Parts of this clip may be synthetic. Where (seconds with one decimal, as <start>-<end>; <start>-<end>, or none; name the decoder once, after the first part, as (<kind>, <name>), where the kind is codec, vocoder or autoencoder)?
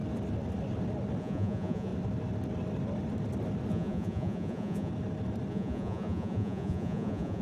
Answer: 1.2-1.9 (vocoder, Vocos); 3.7-4.9; 5.5-7.4